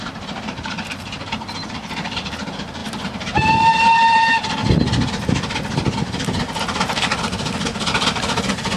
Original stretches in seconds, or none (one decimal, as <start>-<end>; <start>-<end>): 4.6-6.6; 7.1-7.8